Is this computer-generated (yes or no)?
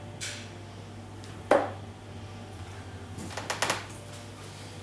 no